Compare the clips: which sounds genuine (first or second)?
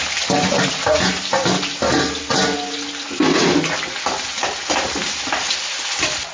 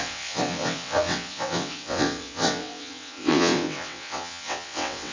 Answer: first